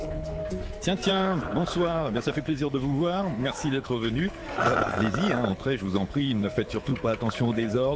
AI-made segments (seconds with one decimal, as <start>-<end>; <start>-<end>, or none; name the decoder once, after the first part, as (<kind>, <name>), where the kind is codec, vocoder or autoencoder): 0.0-0.4 (codec, HILCodec); 1.1-4.4; 5.5-8.0